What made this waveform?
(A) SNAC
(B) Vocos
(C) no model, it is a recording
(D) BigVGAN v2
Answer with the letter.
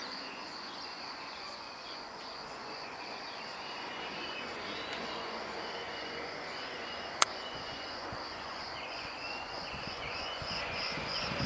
B